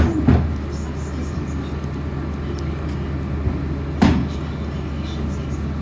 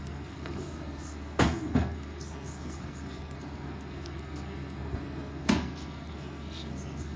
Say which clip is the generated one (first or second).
second